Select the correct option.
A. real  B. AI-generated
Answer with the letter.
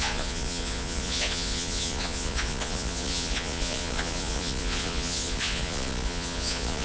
B